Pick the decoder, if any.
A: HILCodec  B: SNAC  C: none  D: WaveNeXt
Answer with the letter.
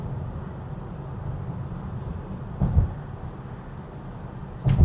C